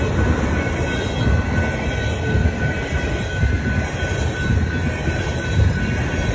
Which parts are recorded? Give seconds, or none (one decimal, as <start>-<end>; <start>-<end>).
0.0-4.8; 5.8-6.3